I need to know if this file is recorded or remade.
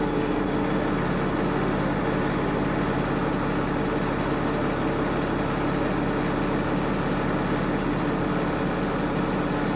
recorded